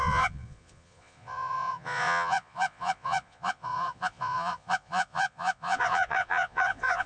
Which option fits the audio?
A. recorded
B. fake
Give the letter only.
B